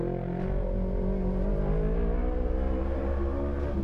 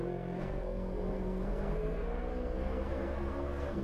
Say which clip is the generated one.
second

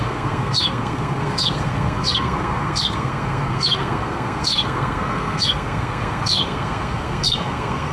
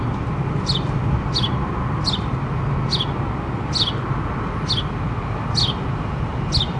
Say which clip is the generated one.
first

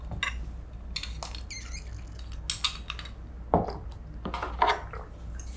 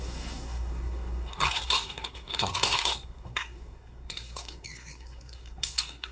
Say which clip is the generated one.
second